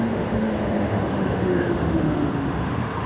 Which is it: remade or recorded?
remade